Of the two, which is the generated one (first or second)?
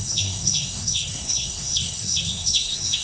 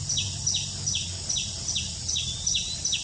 first